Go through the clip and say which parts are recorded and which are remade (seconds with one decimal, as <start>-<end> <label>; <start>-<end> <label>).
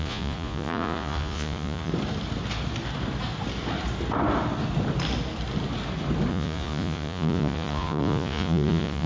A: 0.0-1.9 remade; 1.9-6.3 recorded; 6.3-9.1 remade